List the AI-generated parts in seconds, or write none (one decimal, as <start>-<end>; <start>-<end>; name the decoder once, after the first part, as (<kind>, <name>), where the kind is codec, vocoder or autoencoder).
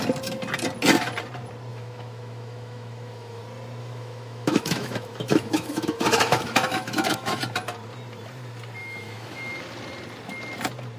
1.7-3.4 (autoencoder, DAC-VAE); 3.8-7.4; 8.8-9.6